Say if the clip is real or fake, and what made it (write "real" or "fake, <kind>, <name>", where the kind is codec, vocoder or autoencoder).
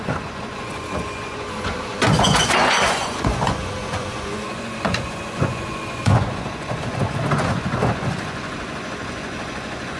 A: fake, vocoder, Vocos